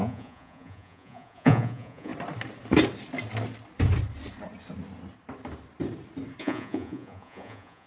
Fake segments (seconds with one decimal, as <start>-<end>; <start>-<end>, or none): 0.0-2.1; 6.4-7.9